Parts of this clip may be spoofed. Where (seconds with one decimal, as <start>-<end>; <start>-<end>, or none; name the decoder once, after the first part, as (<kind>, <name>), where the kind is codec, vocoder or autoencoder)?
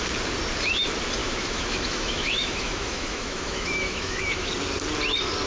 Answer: 1.2-4.5 (autoencoder, DAC-VAE)